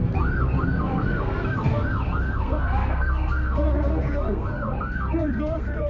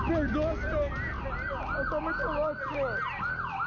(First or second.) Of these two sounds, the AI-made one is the first